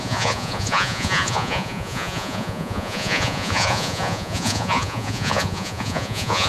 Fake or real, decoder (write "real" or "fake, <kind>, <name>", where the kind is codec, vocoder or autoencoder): fake, vocoder, Vocos